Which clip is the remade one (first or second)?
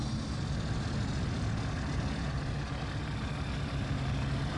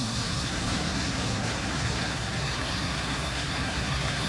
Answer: second